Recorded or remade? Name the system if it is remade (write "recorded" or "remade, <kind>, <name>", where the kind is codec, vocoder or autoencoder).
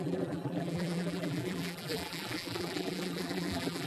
remade, vocoder, BigVGAN v2